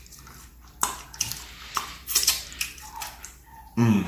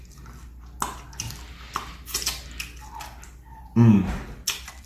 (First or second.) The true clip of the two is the second